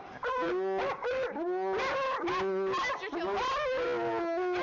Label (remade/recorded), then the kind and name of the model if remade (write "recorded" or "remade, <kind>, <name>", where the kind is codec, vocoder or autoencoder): recorded